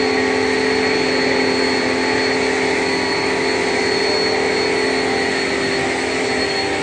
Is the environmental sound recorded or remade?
recorded